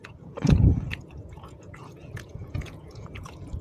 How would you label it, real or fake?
fake